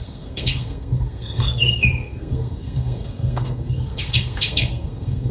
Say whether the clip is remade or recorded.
remade